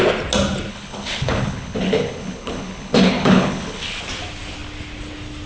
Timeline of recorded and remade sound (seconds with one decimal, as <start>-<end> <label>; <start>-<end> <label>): 0.0-0.7 recorded; 0.7-4.0 remade; 4.0-5.5 recorded